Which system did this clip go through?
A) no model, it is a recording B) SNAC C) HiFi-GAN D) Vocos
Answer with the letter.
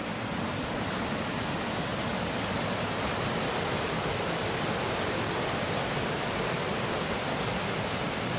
A